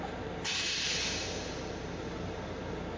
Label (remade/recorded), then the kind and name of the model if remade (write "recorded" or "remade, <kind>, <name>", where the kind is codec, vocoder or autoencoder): recorded